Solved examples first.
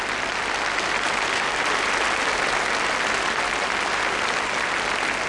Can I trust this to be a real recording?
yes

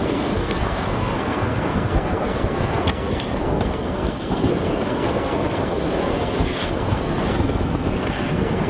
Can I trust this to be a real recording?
no